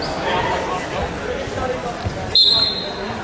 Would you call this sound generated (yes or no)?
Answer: no